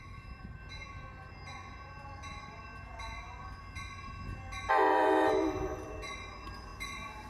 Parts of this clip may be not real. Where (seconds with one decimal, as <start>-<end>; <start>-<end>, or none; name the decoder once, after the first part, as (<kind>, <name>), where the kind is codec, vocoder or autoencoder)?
0.0-0.6 (vocoder, BigVGAN v2); 4.7-7.3